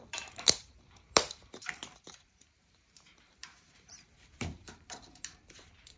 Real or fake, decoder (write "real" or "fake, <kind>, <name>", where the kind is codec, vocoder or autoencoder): fake, vocoder, BigVGAN v2